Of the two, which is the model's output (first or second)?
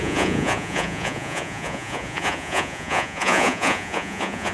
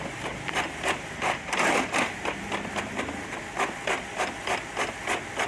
first